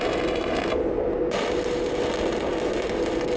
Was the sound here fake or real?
real